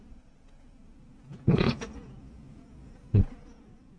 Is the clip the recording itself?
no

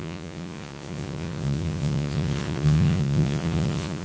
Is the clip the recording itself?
no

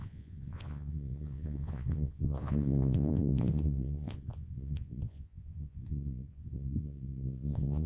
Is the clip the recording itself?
no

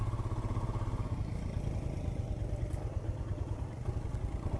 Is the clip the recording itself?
yes